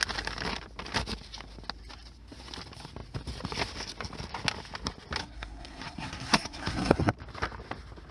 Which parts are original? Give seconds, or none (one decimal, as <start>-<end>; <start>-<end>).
0.0-5.2; 7.1-8.1